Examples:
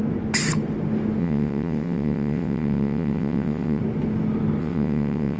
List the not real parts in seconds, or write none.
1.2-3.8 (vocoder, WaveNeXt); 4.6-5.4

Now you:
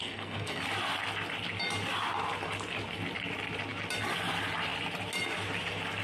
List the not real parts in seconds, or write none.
0.0-0.6 (codec, SNAC)

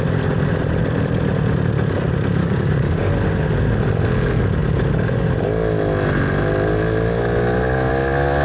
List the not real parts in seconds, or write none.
2.4-3.1 (codec, DAC)

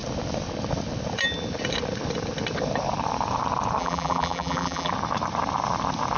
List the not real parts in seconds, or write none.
3.8-4.9 (vocoder, BigVGAN v2)

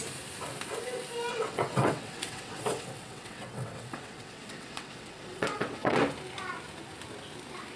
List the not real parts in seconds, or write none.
1.3-6.0 (vocoder, WaveNeXt)